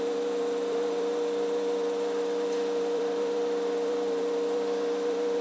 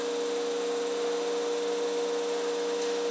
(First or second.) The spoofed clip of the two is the first